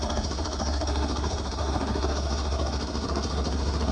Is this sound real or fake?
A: fake